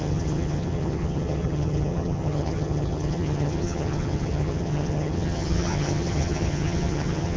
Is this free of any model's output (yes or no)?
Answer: no